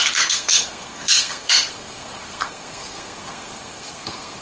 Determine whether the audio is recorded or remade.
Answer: remade